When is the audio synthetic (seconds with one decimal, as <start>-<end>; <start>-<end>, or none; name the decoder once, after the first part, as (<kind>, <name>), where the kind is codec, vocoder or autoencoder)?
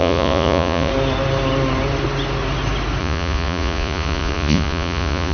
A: 0.0-0.9 (vocoder, Vocos); 3.0-5.3